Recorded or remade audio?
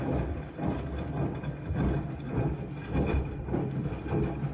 recorded